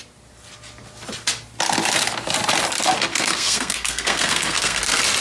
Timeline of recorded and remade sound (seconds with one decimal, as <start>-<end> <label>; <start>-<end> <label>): 0.0-3.1 recorded; 3.1-4.8 remade; 4.8-5.2 recorded